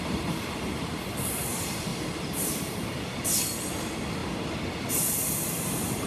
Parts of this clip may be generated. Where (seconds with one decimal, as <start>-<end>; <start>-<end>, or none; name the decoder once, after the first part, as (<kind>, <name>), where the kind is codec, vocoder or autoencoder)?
0.0-4.2 (vocoder, BigVGAN v2); 5.0-6.1